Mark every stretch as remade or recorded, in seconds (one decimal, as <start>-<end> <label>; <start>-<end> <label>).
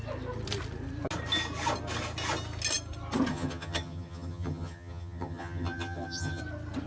0.0-3.3 recorded; 3.3-6.4 remade; 6.4-6.9 recorded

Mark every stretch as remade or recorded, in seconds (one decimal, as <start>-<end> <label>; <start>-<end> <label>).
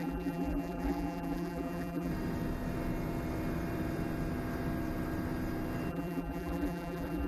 0.0-2.1 remade; 2.1-5.9 recorded; 5.9-7.3 remade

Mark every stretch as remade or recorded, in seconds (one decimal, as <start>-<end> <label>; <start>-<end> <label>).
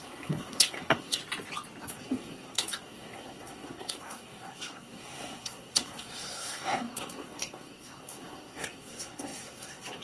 0.0-1.2 remade; 1.2-1.8 recorded; 1.8-10.0 remade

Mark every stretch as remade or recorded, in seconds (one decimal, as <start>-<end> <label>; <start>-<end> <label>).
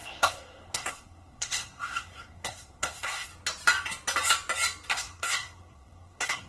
0.0-3.3 remade; 3.3-4.9 recorded; 4.9-6.5 remade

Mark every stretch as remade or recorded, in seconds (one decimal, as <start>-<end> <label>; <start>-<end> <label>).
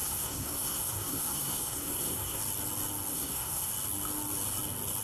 0.0-2.4 remade; 2.4-3.1 recorded; 3.1-3.7 remade; 3.7-5.0 recorded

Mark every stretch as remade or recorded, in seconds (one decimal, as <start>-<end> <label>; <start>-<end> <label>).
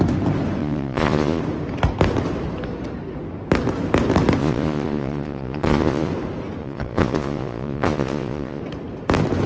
0.0-0.6 recorded; 0.6-1.4 remade; 1.4-4.4 recorded; 4.4-6.1 remade; 6.1-6.6 recorded; 6.6-8.6 remade; 8.6-9.5 recorded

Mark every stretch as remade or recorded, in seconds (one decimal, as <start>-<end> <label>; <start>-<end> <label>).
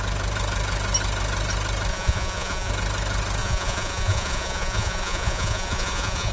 0.0-1.9 recorded; 1.9-2.7 remade; 2.7-3.4 recorded; 3.4-6.3 remade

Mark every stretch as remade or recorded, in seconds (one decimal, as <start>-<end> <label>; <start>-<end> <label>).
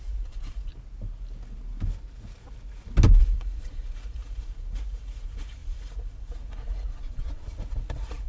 0.0-0.7 remade; 0.7-3.2 recorded; 3.2-8.3 remade